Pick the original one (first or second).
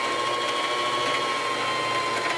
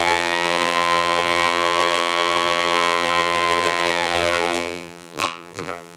first